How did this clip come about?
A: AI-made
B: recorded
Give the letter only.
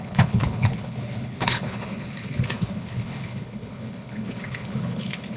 A